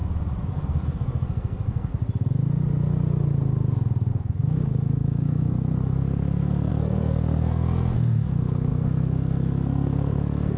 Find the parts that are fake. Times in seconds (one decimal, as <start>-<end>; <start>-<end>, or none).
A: 0.5-1.9; 4.1-10.6